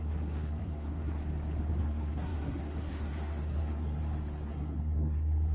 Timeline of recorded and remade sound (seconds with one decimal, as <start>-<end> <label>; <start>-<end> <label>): 0.0-1.2 remade; 1.2-1.8 recorded; 1.8-4.0 remade; 4.0-4.5 recorded; 4.5-5.5 remade